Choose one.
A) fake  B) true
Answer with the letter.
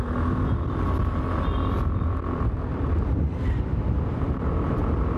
B